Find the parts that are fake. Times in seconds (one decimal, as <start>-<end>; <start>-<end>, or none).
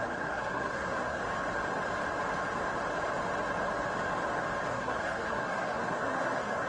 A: 0.0-1.2; 4.7-6.7